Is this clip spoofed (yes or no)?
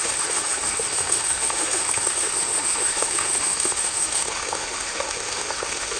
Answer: yes